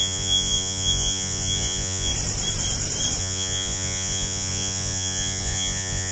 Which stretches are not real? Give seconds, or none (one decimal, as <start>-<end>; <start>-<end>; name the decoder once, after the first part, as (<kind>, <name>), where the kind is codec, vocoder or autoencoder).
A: 0.0-2.1 (vocoder, Vocos); 3.2-6.1